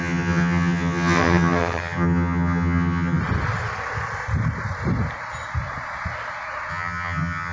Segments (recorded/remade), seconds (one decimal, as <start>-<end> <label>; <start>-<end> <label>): 0.0-3.2 remade; 3.2-6.7 recorded; 6.7-7.5 remade